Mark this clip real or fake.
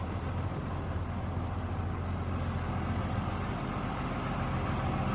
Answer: real